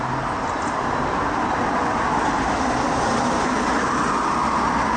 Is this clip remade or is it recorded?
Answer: recorded